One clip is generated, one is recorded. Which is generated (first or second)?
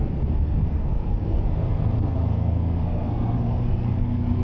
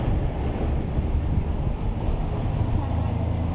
first